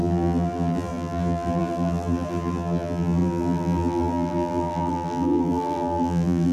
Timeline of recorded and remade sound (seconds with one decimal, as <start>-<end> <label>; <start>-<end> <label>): 0.0-6.5 remade